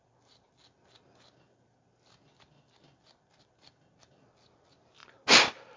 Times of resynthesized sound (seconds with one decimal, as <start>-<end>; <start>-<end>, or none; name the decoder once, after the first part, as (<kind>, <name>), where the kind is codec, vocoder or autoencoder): none